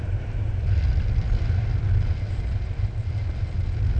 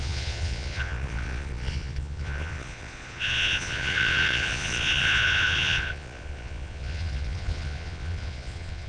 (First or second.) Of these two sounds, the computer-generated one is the second